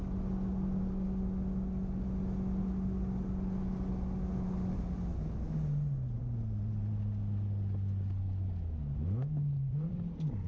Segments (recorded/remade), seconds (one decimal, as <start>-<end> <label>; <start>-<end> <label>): 0.0-10.5 recorded

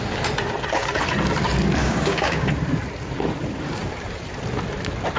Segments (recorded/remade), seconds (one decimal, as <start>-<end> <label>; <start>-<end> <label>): 0.0-1.8 recorded; 1.8-2.5 remade; 2.5-5.2 recorded

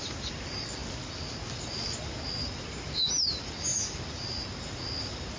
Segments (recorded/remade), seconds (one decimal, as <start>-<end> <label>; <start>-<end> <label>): 0.0-5.4 recorded

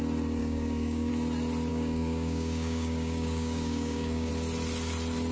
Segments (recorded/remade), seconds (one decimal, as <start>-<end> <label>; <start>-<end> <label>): 0.0-0.4 recorded; 0.4-1.1 remade; 1.1-1.7 recorded; 1.7-4.3 remade; 4.3-5.3 recorded

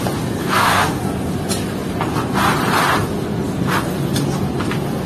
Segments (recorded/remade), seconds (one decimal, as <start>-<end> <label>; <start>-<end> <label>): 0.0-0.4 recorded; 0.4-1.0 remade; 1.0-5.1 recorded

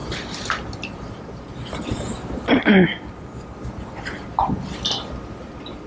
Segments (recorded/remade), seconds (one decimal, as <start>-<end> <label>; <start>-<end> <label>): 0.0-5.9 recorded

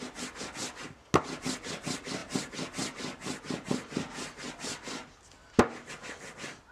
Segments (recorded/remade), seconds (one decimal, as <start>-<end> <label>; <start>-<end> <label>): 0.0-6.7 recorded

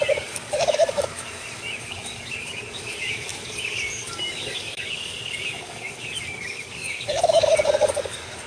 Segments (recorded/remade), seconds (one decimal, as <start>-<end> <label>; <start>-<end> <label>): 0.0-8.5 remade